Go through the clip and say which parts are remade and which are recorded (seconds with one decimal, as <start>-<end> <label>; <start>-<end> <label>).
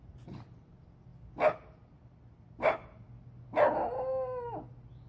0.0-5.1 recorded